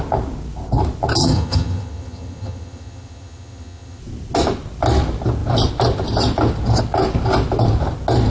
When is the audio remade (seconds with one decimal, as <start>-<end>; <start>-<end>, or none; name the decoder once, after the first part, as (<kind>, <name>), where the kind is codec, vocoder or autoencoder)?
1.2-4.0 (vocoder, HiFi-GAN)